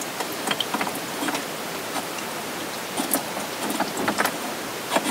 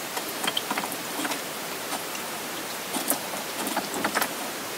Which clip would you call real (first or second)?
first